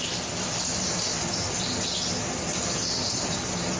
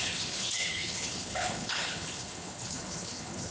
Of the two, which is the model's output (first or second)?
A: second